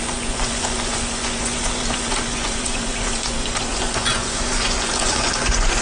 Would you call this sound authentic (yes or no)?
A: no